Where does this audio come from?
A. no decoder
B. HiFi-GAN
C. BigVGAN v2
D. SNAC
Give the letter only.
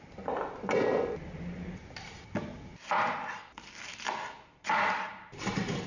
A